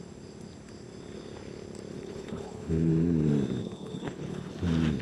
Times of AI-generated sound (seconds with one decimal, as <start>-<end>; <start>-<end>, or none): 1.9-2.9; 3.6-4.5